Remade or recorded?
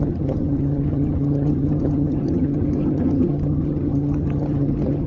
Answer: remade